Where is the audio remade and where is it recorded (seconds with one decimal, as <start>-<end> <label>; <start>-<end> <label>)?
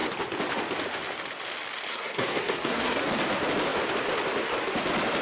0.0-1.9 recorded; 1.9-3.1 remade; 3.1-5.2 recorded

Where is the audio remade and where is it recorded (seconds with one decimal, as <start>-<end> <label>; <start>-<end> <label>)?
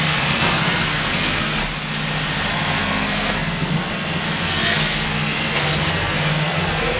0.0-1.6 remade; 1.6-2.5 recorded; 2.5-7.0 remade